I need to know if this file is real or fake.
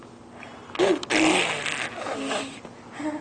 real